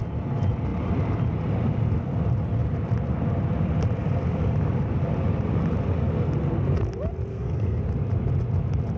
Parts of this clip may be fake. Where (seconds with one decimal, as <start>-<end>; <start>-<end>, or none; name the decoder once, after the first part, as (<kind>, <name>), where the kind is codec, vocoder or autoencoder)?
7.3-7.8 (codec, SNAC)